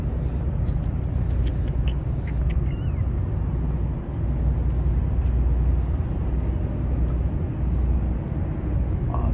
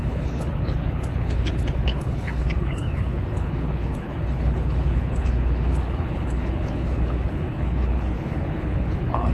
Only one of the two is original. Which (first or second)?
first